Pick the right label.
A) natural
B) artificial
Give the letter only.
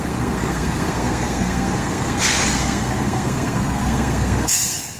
B